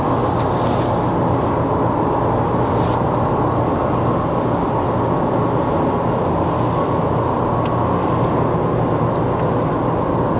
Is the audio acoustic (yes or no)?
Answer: yes